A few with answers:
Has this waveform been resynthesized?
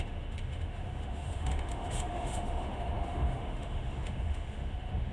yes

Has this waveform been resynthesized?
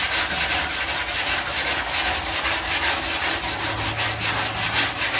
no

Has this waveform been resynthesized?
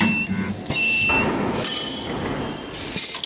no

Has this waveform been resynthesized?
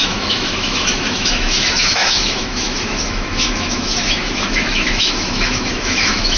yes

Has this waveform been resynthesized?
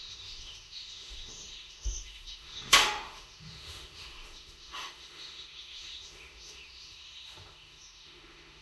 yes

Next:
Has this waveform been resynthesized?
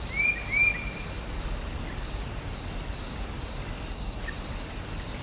no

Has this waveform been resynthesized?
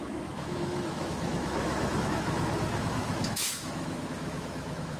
yes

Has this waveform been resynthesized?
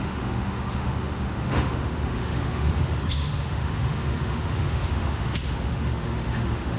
yes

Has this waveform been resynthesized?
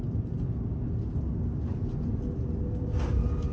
no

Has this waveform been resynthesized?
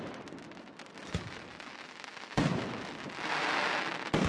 no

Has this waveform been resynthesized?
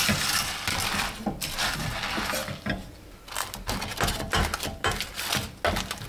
no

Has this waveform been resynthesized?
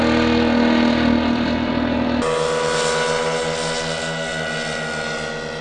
no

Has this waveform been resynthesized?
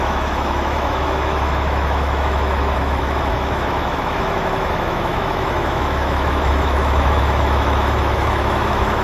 yes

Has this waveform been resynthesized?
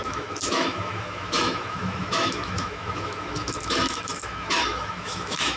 yes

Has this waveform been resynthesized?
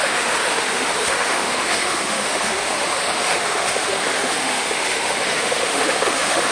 yes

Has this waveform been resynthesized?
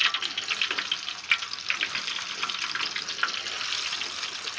no